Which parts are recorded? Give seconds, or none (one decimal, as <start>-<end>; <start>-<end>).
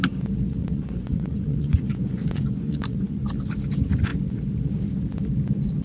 0.0-0.6; 3.3-5.8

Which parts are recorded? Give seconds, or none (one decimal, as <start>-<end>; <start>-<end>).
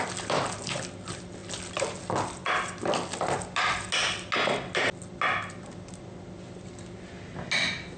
0.0-8.0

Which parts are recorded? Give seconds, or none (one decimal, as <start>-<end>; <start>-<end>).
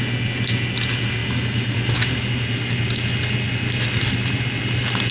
0.0-5.1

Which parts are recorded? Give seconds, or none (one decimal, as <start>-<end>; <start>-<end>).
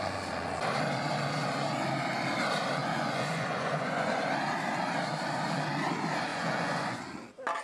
0.0-2.8; 4.2-6.3; 7.0-7.6